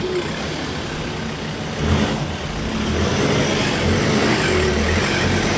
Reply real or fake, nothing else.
real